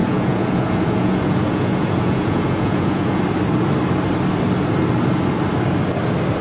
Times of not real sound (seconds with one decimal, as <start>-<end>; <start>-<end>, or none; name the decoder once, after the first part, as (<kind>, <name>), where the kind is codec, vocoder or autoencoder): 0.0-3.2 (vocoder, Vocos)